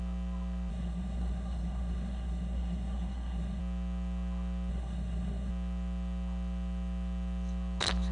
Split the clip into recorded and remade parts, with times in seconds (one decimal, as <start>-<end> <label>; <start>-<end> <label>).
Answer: 0.0-0.7 recorded; 0.7-3.6 remade; 3.6-4.7 recorded; 4.7-5.5 remade; 5.5-8.1 recorded